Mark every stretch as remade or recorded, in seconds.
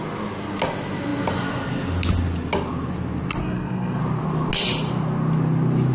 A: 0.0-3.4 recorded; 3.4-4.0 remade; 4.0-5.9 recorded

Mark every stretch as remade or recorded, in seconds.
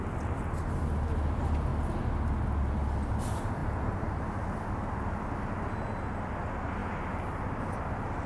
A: 0.0-8.3 recorded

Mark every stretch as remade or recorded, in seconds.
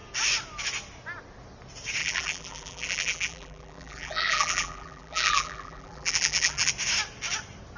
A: 0.0-2.0 recorded; 2.0-6.7 remade; 6.7-7.8 recorded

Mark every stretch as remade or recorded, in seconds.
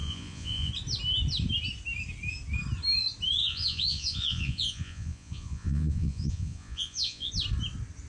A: 0.0-0.7 remade; 0.7-3.4 recorded; 3.4-7.3 remade; 7.3-8.1 recorded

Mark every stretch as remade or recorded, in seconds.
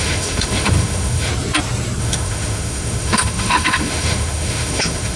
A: 0.0-1.3 remade; 1.3-2.0 recorded; 2.0-5.2 remade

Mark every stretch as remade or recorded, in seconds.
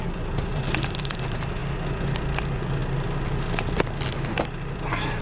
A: 0.0-1.6 remade; 1.6-2.4 recorded; 2.4-2.8 remade; 2.8-3.7 recorded; 3.7-5.2 remade